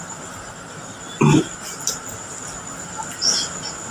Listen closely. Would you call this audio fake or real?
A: real